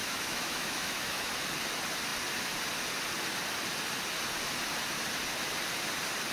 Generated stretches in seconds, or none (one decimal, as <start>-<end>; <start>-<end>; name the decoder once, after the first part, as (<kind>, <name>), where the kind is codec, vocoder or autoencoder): 0.0-1.3 (autoencoder, DAC-VAE)